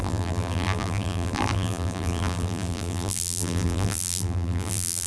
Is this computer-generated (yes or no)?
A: yes